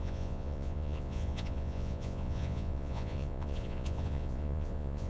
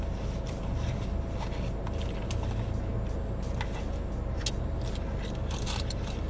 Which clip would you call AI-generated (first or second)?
first